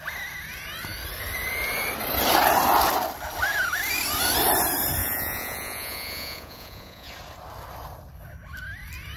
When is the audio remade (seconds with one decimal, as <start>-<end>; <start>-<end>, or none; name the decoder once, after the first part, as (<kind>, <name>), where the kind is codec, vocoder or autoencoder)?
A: 5.0-7.1 (vocoder, Vocos)